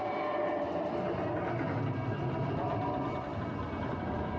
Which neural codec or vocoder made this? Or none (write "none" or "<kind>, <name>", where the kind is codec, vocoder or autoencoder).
none